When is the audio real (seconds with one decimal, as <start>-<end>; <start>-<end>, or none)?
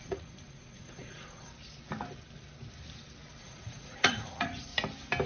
1.5-3.4; 4.7-5.3